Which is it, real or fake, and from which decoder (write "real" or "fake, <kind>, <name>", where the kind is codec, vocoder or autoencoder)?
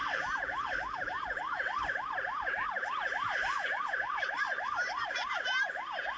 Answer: fake, vocoder, BigVGAN v2